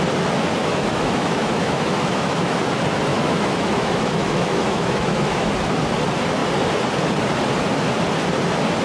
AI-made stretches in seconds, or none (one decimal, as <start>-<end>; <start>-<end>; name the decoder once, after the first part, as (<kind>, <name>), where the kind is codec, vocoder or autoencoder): 0.6-2.6 (autoencoder, DAC-VAE); 3.1-5.5